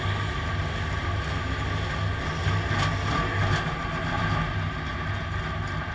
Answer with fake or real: real